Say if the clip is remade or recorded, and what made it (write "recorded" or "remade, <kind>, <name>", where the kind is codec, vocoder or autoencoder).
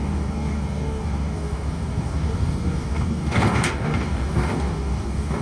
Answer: remade, codec, DAC